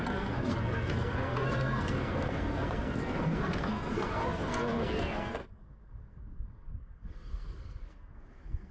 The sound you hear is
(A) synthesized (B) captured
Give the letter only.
A